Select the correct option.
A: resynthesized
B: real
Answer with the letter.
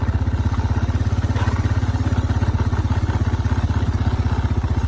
B